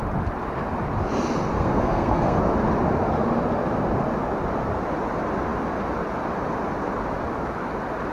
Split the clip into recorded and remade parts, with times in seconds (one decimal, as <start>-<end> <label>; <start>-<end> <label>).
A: 0.0-1.5 recorded; 1.5-2.4 remade; 2.4-8.1 recorded